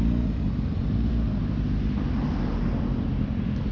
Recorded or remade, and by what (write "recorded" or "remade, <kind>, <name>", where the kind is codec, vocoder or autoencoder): recorded